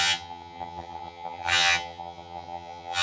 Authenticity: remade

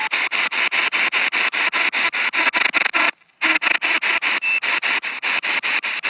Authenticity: recorded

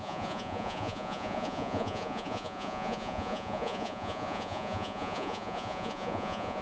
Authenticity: remade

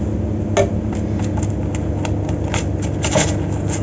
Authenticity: recorded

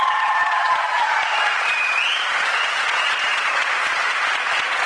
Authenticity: remade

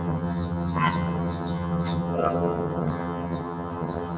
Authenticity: remade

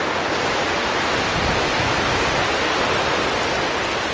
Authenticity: recorded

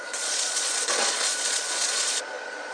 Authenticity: remade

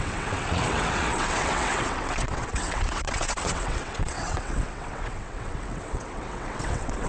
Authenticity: remade